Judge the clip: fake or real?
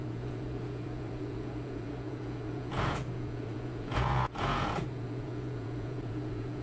fake